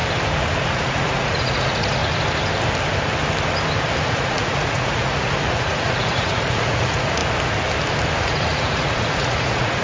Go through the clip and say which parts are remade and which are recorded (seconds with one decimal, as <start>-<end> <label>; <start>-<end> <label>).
0.0-0.6 recorded; 0.6-2.0 remade; 2.0-4.1 recorded; 4.1-7.2 remade; 7.2-8.2 recorded; 8.2-9.8 remade